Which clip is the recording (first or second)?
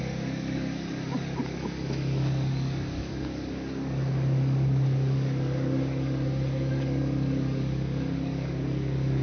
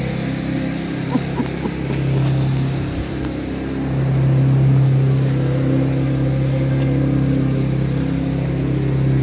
second